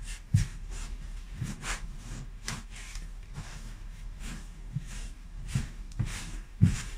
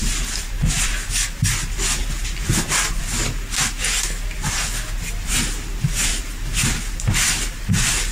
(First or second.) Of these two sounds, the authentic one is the second